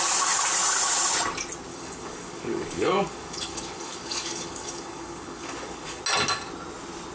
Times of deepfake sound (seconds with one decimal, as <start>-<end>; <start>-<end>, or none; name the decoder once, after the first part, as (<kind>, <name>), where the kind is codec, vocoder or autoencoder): 1.7-6.0 (codec, DAC)